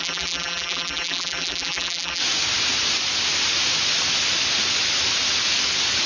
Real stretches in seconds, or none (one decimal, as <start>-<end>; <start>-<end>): 2.2-6.1